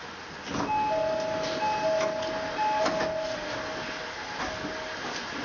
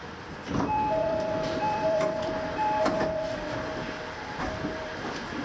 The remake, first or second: second